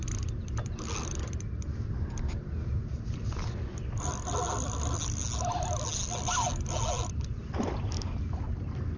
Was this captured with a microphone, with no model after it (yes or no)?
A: yes